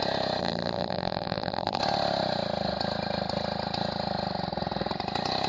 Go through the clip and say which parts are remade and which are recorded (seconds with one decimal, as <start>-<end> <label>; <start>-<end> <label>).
0.0-0.4 recorded; 0.4-1.8 remade; 1.8-5.5 recorded